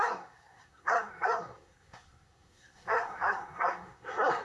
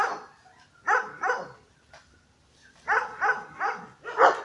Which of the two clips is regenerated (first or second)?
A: first